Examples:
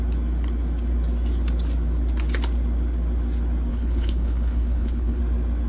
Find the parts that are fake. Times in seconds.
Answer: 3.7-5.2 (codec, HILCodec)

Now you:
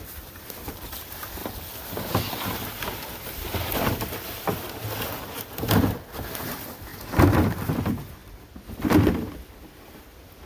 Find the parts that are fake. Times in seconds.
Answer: 6.9-7.6 (vocoder, BigVGAN v2)

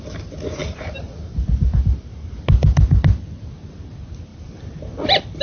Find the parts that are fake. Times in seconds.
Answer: 0.6-2.3 (vocoder, BigVGAN v2); 4.3-5.4

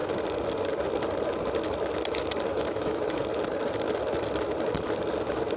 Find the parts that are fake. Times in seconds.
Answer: 2.5-3.2 (autoencoder, DAC-VAE)

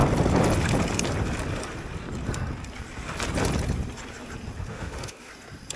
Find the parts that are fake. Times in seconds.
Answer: 4.7-5.3 (autoencoder, DAC-VAE)

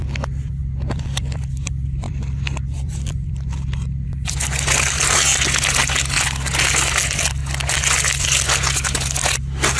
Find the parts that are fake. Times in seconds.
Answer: 0.6-5.0 (vocoder, BigVGAN v2)

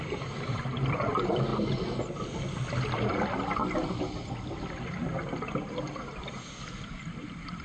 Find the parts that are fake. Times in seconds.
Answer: 0.0-1.5 (vocoder, BigVGAN v2); 2.6-3.6; 5.7-7.6

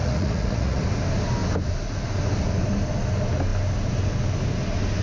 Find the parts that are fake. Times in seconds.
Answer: 0.0-0.8 (vocoder, Vocos)